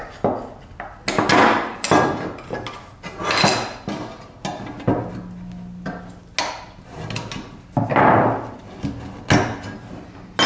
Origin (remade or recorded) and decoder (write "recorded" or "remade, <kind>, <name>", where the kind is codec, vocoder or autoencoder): recorded